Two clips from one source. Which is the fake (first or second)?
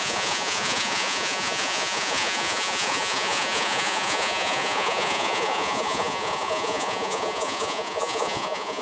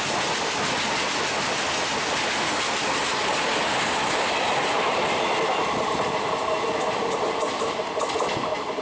first